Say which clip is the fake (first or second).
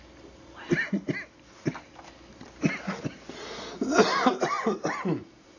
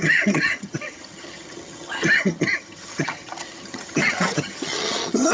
second